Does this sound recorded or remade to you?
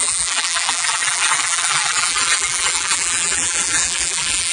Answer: remade